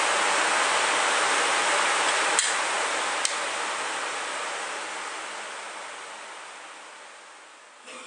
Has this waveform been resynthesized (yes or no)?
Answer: no